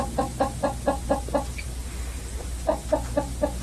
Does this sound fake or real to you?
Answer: real